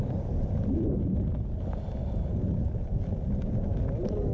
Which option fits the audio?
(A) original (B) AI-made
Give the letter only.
A